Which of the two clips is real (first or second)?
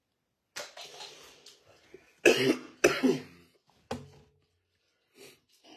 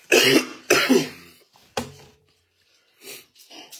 first